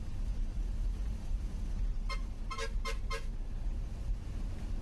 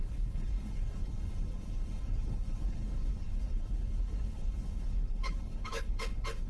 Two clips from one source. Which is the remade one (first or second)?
second